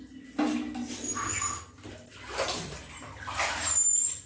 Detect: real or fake real